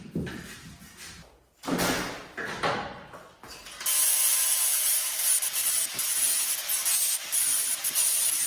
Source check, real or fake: real